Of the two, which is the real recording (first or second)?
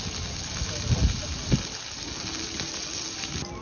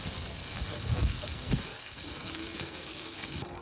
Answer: first